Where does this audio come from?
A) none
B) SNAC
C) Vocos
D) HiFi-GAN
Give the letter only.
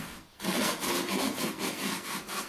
B